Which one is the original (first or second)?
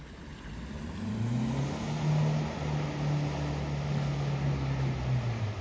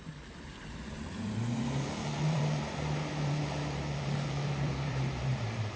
first